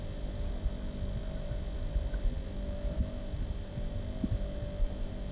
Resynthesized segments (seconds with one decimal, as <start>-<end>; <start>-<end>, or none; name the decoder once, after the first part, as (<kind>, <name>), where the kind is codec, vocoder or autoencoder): none